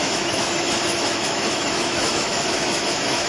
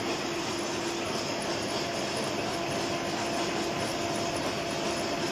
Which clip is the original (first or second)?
second